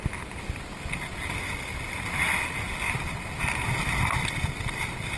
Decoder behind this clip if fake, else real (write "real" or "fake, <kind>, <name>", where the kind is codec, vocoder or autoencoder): real